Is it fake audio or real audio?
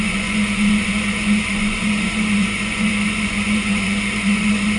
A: fake